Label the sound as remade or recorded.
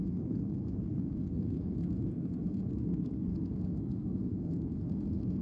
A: remade